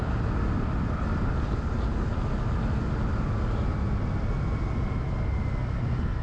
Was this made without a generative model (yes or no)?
yes